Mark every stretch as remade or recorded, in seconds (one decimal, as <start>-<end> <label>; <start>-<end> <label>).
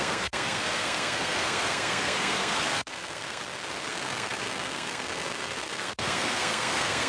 0.0-3.4 remade; 3.4-3.9 recorded; 3.9-7.1 remade